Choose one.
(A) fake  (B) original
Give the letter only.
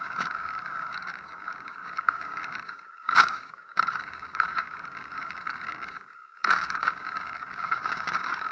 A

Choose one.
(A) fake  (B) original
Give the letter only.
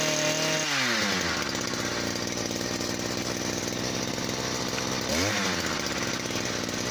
B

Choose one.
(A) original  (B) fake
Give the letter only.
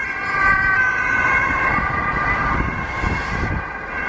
B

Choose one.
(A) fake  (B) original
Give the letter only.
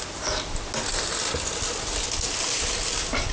B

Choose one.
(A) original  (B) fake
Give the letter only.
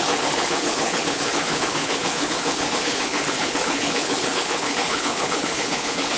B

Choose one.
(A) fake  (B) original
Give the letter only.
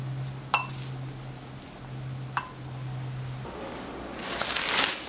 B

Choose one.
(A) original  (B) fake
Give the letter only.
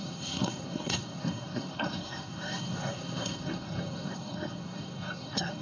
B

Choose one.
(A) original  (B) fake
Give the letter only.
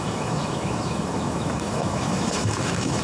B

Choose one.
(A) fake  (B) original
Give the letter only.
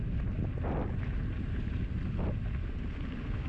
B